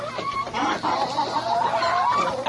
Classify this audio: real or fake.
real